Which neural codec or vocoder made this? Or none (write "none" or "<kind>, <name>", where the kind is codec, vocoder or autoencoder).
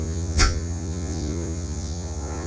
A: vocoder, Vocos